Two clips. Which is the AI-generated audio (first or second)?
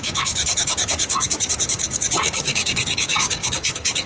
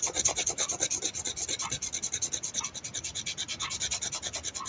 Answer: first